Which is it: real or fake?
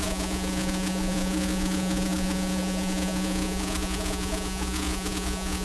fake